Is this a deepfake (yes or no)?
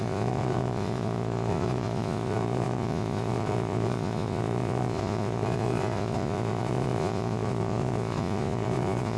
yes